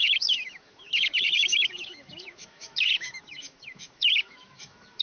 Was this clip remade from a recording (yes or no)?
yes